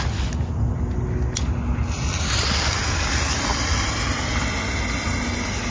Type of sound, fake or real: real